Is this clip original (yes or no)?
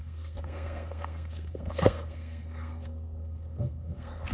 no